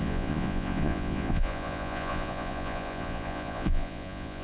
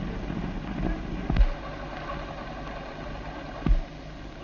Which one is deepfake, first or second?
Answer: first